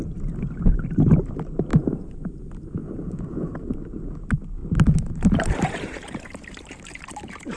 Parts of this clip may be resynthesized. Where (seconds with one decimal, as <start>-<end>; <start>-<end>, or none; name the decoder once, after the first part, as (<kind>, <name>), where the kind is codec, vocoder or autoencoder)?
1.7-2.2 (vocoder, BigVGAN v2); 4.6-7.6